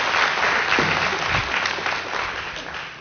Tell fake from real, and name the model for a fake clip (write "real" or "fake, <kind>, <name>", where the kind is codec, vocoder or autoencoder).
real